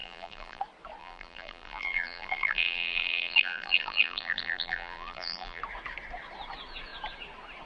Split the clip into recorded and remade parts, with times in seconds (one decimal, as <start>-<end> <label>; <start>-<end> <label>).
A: 0.0-0.6 remade; 0.6-1.0 recorded; 1.0-5.6 remade; 5.6-7.7 recorded